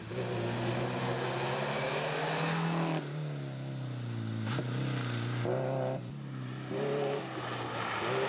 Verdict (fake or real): real